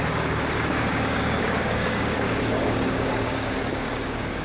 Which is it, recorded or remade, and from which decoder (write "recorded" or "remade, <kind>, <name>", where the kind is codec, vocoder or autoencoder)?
remade, codec, DAC